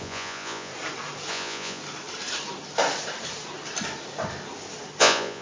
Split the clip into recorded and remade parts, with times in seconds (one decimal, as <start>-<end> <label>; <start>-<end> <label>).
0.0-0.7 remade; 0.7-1.3 recorded; 1.3-1.8 remade; 1.8-5.0 recorded; 5.0-5.4 remade